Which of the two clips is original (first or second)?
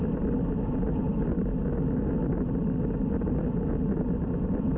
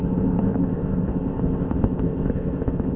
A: first